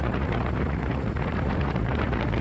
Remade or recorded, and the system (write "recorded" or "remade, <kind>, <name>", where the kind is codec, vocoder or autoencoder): remade, vocoder, Vocos